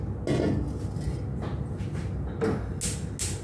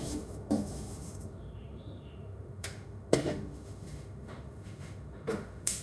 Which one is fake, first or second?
second